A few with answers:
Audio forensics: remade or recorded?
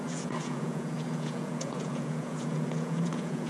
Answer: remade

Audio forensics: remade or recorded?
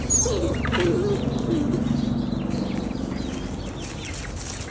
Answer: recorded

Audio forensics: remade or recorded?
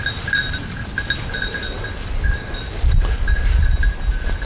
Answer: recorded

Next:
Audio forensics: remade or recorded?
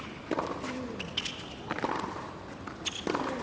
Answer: recorded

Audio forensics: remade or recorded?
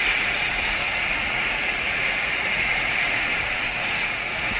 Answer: remade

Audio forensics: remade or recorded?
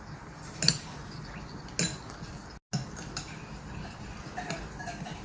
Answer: recorded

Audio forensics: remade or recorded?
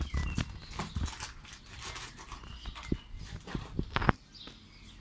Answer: recorded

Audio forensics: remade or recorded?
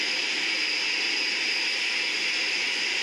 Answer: recorded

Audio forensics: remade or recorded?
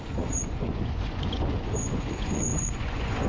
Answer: remade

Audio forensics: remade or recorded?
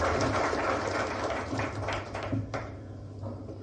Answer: recorded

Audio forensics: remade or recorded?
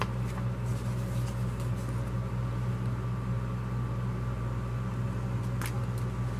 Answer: recorded